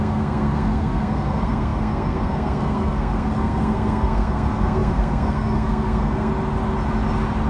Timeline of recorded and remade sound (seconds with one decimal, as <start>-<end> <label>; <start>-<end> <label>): 0.0-6.3 remade; 6.3-7.5 recorded